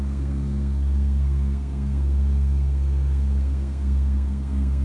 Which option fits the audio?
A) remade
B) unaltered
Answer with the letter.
A